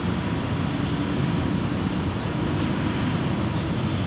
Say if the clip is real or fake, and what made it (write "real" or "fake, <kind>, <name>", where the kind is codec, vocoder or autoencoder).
real